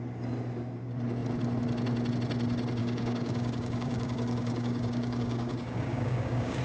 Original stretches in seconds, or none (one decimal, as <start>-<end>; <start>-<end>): 0.0-2.8